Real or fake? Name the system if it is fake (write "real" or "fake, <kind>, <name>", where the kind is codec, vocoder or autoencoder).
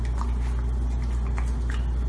real